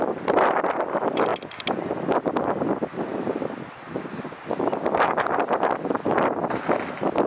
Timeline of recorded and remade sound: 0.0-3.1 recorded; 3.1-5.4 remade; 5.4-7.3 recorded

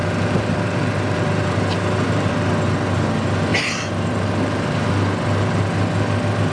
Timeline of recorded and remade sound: 0.0-2.3 remade; 2.3-3.5 recorded; 3.5-4.9 remade; 4.9-6.5 recorded

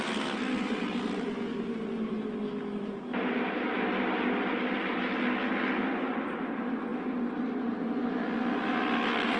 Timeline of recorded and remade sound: 0.0-9.4 recorded

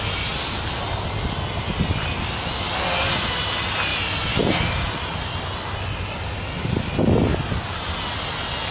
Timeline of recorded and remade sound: 0.0-8.7 recorded